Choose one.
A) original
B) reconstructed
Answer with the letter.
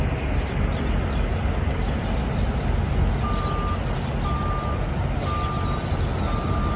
A